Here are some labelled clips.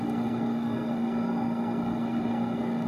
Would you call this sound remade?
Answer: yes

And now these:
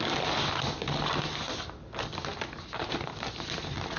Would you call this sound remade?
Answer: no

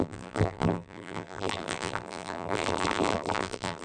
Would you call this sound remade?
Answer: yes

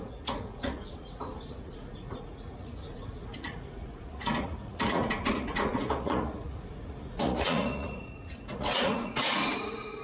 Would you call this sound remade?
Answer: yes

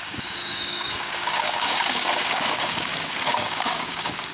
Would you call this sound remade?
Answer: yes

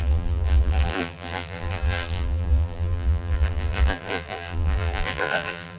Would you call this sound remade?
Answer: yes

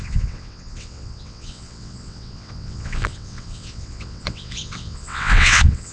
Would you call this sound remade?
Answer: yes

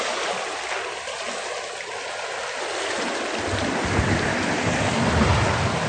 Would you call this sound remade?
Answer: no